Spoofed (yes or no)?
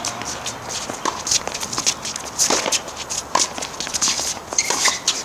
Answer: no